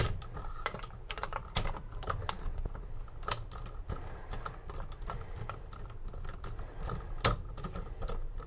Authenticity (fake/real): real